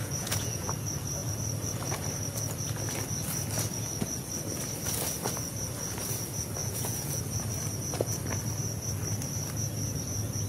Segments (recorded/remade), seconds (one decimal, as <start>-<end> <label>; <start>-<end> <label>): 0.0-0.7 remade; 0.7-6.6 recorded; 6.6-7.2 remade; 7.2-10.5 recorded